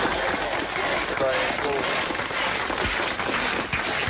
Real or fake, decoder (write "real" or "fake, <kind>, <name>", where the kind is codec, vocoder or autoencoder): real